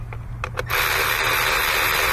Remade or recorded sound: recorded